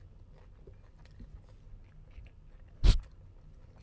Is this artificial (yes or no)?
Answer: no